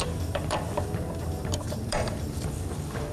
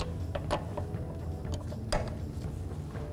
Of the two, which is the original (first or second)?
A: second